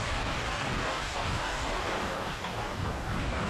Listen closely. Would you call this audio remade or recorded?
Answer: remade